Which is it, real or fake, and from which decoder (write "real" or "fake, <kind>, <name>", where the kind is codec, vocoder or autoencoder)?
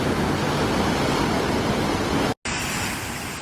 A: real